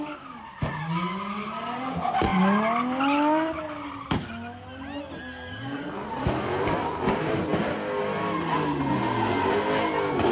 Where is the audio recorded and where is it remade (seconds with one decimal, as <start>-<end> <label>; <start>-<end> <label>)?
0.0-10.3 recorded

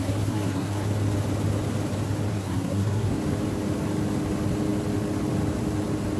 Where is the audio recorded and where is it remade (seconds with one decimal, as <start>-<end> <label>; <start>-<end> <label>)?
0.0-0.9 remade; 0.9-2.3 recorded; 2.3-3.2 remade; 3.2-6.2 recorded

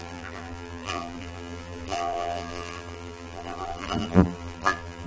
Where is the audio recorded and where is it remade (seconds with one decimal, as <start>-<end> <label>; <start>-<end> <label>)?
0.0-5.1 remade

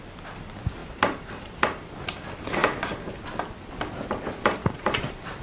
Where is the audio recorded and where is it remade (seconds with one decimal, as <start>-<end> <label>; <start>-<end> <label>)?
0.0-0.8 recorded; 0.8-1.9 remade; 1.9-4.6 recorded; 4.6-5.4 remade

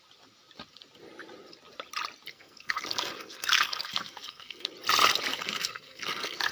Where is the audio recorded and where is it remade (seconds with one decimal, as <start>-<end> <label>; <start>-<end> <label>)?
0.0-2.3 recorded; 2.3-4.7 remade; 4.7-5.3 recorded; 5.3-6.5 remade

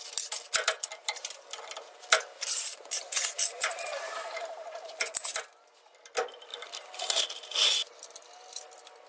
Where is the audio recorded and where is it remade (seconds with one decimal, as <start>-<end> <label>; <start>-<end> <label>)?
0.0-1.0 recorded; 1.0-2.0 remade; 2.0-2.6 recorded; 2.6-5.4 remade; 5.4-6.5 recorded; 6.5-7.2 remade; 7.2-9.1 recorded

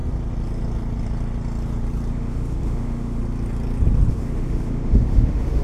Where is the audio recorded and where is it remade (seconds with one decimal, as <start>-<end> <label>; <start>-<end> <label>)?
0.0-2.1 recorded; 2.1-3.2 remade; 3.2-4.1 recorded; 4.1-5.6 remade